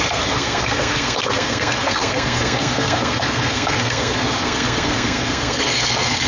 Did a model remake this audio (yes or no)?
yes